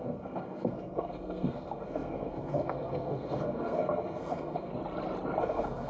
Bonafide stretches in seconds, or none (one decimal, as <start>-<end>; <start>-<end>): 4.7-5.4